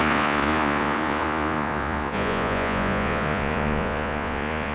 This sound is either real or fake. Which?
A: fake